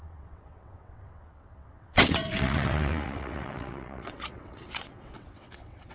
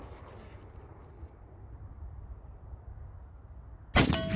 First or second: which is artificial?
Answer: first